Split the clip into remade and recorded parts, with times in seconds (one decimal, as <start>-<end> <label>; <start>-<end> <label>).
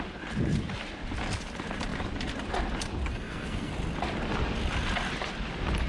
0.0-3.1 recorded; 3.1-3.7 remade; 3.7-5.9 recorded